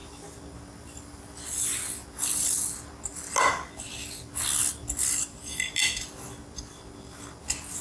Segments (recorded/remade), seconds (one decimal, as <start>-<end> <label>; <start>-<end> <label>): 0.0-7.8 recorded